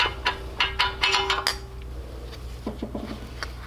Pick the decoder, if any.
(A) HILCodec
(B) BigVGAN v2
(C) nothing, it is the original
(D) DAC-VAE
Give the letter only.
C